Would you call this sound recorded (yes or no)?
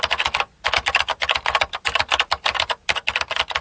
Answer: yes